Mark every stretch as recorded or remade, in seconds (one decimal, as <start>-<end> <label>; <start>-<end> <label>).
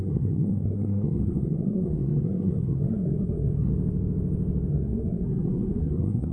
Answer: 0.0-3.7 remade; 3.7-4.7 recorded; 4.7-6.3 remade